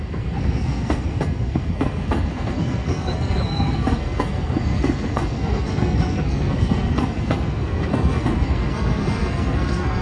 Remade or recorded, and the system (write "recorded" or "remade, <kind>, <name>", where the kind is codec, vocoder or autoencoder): remade, codec, SNAC